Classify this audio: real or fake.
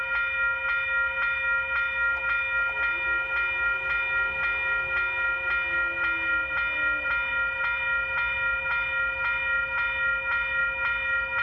real